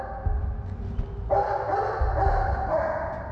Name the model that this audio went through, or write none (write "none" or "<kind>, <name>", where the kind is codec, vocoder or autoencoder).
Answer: none